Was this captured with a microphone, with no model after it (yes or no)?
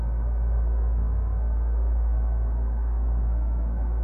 no